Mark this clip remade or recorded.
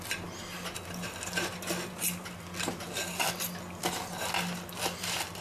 recorded